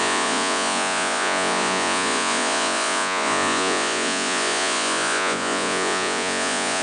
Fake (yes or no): yes